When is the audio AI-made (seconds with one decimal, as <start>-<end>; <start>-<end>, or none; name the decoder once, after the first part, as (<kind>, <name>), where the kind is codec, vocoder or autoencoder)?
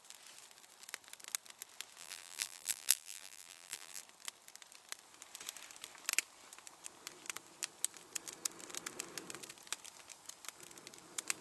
2.0-4.0 (vocoder, BigVGAN v2)